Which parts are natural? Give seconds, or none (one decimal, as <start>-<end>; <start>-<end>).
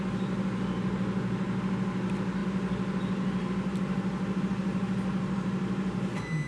0.0-6.5